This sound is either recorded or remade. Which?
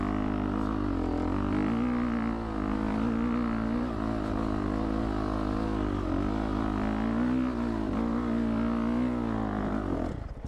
recorded